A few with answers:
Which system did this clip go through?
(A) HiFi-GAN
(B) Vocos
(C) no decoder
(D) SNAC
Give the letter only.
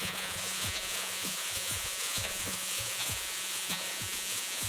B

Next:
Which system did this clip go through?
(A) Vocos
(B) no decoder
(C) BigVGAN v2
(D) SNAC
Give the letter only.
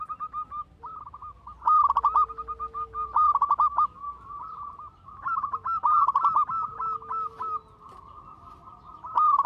B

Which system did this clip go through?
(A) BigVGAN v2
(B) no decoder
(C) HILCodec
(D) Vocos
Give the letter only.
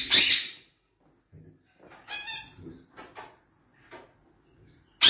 B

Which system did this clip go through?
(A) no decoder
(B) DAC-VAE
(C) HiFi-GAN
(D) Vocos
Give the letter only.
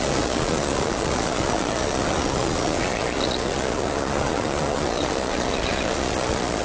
D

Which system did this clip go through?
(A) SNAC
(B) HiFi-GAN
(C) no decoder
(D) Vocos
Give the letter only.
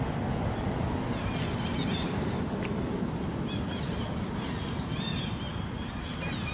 C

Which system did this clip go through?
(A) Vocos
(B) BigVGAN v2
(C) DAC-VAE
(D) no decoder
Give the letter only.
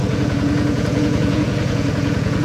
A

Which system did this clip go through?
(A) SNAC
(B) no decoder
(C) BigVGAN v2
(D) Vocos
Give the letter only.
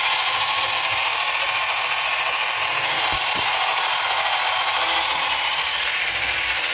B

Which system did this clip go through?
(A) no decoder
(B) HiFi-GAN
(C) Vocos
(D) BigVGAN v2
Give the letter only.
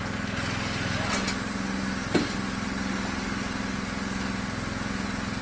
A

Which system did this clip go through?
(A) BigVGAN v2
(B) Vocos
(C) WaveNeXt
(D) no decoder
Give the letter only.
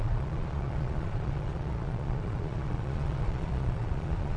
B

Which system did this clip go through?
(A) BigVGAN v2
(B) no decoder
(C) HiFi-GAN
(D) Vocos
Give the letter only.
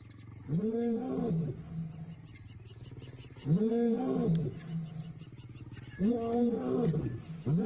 B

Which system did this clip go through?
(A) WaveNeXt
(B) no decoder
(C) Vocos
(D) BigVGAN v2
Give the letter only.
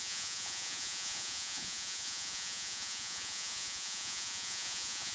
C